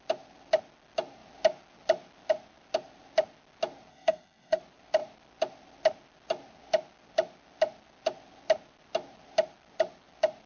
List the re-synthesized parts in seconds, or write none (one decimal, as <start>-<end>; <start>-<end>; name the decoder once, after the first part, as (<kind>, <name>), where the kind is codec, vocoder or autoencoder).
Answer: 3.9-4.6 (codec, SNAC)